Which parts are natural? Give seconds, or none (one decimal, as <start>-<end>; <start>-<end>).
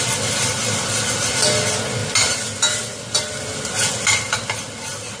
0.0-5.2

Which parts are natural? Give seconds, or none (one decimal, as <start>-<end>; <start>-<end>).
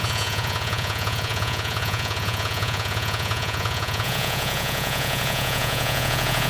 none